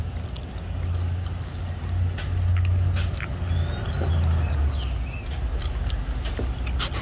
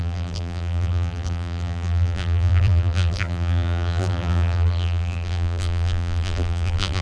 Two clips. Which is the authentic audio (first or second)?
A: first